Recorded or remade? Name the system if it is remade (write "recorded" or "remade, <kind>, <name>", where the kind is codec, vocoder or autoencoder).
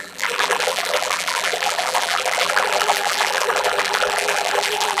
remade, vocoder, BigVGAN v2